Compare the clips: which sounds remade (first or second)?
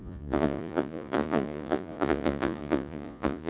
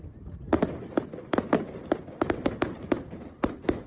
first